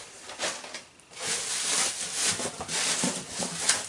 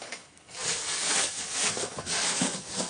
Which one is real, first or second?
first